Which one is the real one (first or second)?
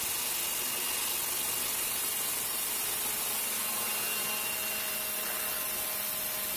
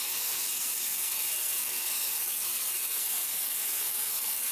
first